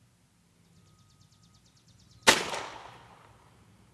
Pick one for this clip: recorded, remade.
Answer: recorded